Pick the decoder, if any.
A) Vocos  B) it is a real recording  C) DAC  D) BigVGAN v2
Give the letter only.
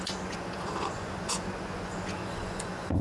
A